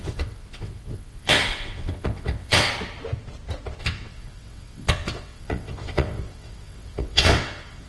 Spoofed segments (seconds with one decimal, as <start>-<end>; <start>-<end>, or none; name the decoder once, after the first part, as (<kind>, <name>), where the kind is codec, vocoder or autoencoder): 0.0-2.7 (vocoder, WaveNeXt); 3.8-7.9